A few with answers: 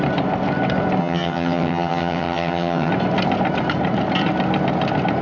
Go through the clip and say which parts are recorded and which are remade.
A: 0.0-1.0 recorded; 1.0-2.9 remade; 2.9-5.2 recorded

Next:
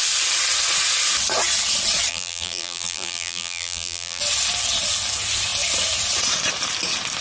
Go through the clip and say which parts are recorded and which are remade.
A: 0.0-2.1 recorded; 2.1-4.2 remade; 4.2-7.2 recorded

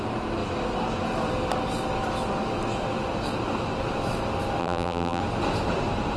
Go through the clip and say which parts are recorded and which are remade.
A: 0.0-4.6 recorded; 4.6-5.2 remade; 5.2-6.2 recorded

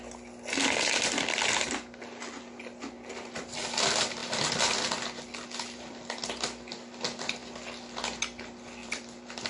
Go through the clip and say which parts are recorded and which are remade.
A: 0.0-8.8 recorded; 8.8-9.5 remade

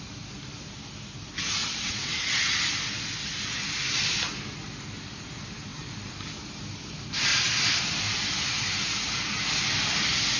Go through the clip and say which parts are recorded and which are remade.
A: 0.0-1.6 recorded; 1.6-2.6 remade; 2.6-10.4 recorded